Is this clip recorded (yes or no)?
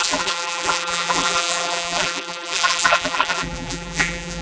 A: no